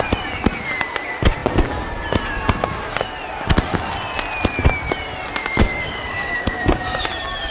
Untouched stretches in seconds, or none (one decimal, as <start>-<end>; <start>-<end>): 0.0-5.4; 7.0-7.5